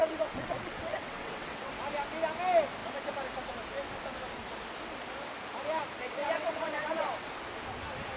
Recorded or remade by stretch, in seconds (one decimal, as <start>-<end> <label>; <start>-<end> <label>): 0.0-1.7 remade; 1.7-6.2 recorded; 6.2-7.3 remade; 7.3-8.2 recorded